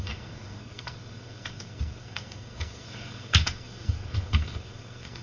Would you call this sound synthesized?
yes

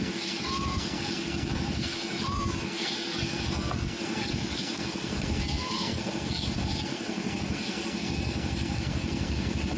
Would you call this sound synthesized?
yes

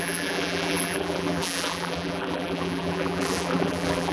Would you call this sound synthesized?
yes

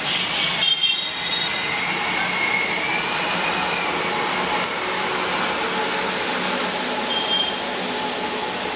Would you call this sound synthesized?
no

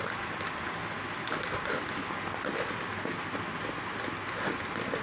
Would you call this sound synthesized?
no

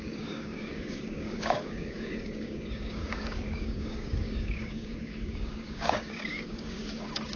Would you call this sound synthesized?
yes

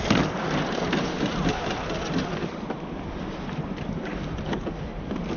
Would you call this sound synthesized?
no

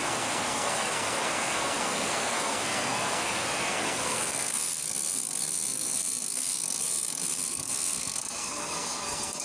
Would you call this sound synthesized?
yes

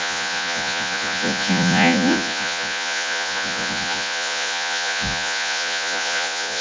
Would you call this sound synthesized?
yes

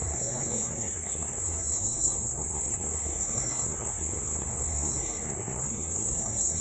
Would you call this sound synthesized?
yes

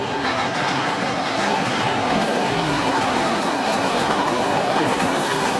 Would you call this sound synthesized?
yes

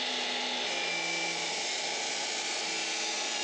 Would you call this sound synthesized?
no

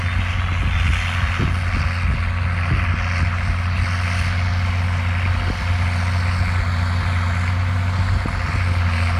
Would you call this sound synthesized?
no